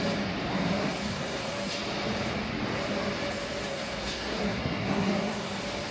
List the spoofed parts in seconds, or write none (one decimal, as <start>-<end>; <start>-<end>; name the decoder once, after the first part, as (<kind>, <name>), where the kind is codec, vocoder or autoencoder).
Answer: 0.8-1.5 (codec, SNAC); 3.7-5.5